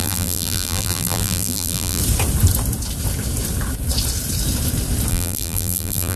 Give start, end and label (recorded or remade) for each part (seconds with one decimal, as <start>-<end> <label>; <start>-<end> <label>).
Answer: 0.0-2.0 remade; 2.0-5.1 recorded; 5.1-6.2 remade